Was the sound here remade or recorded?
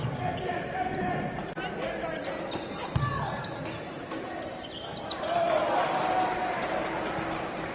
recorded